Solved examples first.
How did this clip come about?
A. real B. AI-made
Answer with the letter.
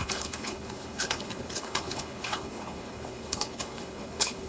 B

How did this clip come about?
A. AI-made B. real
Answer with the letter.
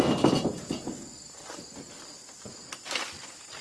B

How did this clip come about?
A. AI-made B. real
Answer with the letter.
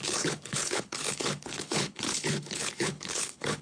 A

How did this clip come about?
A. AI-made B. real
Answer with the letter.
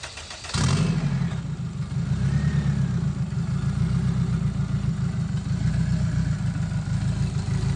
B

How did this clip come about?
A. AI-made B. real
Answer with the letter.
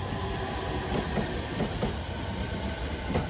B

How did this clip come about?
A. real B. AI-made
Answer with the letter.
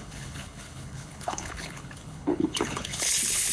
B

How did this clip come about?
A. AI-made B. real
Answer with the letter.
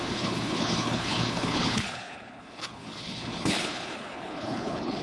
A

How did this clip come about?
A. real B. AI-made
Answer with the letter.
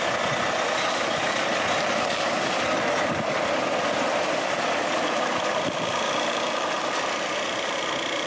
A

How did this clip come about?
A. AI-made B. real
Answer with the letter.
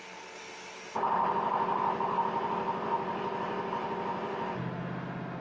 B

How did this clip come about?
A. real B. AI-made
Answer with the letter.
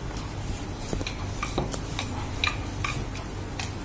A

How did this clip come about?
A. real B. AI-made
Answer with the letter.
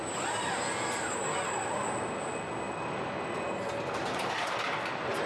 A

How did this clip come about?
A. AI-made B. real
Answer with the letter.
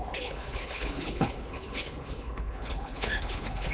A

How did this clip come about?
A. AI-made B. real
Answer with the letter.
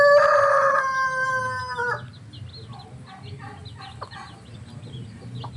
B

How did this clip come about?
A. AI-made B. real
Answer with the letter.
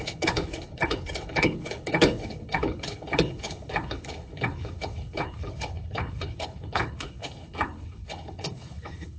A